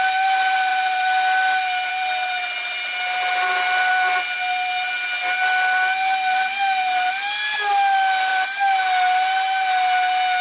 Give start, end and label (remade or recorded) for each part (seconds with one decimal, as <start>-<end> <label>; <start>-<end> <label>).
0.0-10.4 recorded